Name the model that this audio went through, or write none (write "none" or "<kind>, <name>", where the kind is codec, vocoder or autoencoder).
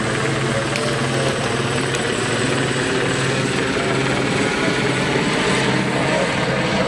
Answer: none